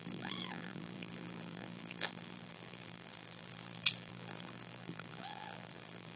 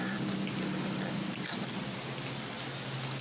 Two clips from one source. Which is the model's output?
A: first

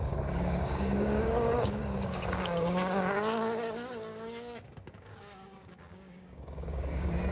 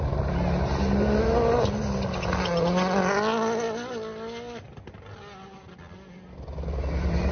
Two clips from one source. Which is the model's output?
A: first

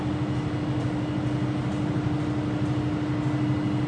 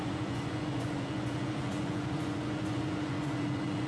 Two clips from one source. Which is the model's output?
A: second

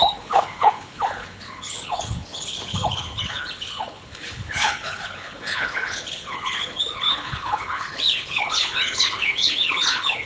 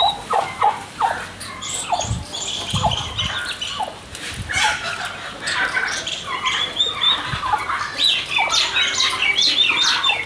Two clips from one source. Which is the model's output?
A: first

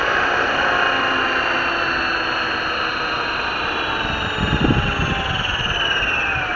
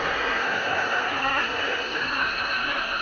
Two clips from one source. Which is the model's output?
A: second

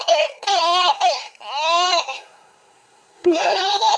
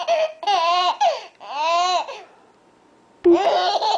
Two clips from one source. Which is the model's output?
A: first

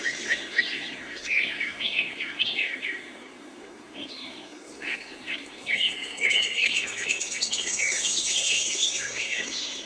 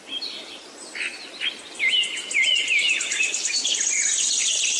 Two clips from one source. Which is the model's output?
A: first